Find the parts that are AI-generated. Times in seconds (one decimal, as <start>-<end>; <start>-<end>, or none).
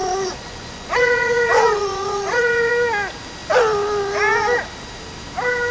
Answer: 0.0-2.7